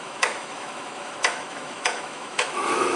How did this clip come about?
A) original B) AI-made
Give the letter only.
B